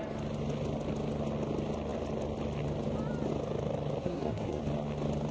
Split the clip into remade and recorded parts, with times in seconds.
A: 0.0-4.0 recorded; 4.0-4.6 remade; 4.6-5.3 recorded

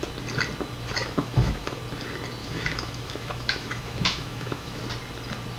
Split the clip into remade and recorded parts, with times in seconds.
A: 0.0-1.0 recorded; 1.0-1.8 remade; 1.8-2.4 recorded; 2.4-4.8 remade; 4.8-5.6 recorded

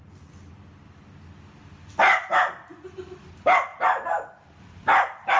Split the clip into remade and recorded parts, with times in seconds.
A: 0.0-5.4 recorded

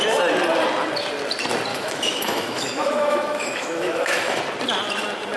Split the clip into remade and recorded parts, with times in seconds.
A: 0.0-1.7 recorded; 1.7-4.4 remade; 4.4-5.4 recorded

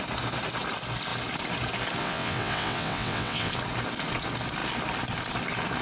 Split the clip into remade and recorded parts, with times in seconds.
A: 0.0-2.0 recorded; 2.0-3.5 remade; 3.5-5.8 recorded